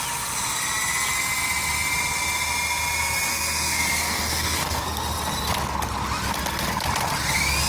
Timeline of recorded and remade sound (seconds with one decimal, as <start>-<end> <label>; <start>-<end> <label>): 0.0-3.3 recorded; 3.3-4.8 remade; 4.8-7.7 recorded